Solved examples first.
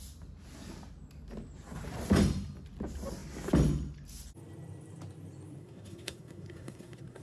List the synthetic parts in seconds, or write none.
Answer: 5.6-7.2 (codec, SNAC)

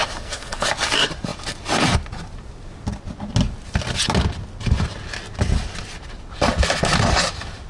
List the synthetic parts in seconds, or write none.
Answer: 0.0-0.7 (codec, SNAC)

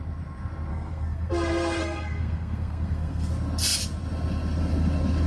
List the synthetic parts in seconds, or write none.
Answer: 0.7-1.3 (codec, SNAC); 1.8-3.3

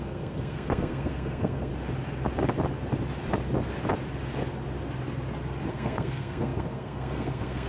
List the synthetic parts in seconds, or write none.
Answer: 0.0-1.7 (codec, SNAC); 5.7-7.7

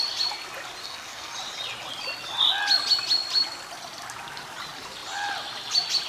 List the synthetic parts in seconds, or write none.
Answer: 0.8-1.3 (codec, SNAC)

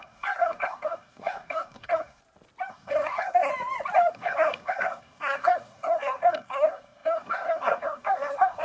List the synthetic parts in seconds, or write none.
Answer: 0.0-2.2 (codec, SNAC); 2.7-3.5; 4.1-8.6

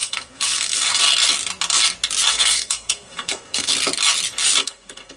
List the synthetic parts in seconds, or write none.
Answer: 0.0-1.0 (codec, SNAC); 2.3-3.7; 4.6-5.2

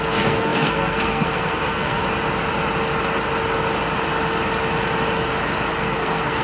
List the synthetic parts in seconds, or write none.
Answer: 0.0-2.0 (codec, SNAC); 5.8-6.4